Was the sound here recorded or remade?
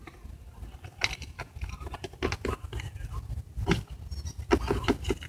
recorded